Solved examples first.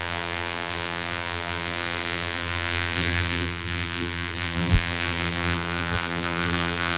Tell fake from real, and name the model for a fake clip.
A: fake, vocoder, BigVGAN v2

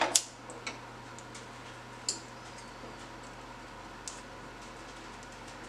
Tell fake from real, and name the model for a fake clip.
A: real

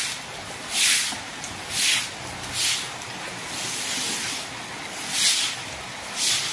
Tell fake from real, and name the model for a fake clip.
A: real